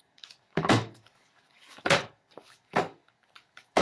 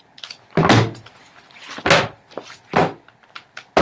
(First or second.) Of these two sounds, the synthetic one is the first